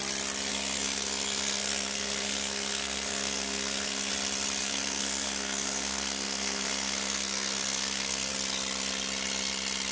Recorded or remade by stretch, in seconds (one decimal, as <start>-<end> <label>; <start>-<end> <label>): 0.0-0.5 recorded; 0.5-4.1 remade; 4.1-4.6 recorded; 4.6-8.3 remade; 8.3-9.9 recorded